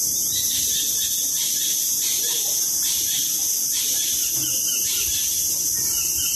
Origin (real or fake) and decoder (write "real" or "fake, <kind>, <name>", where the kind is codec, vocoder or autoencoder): real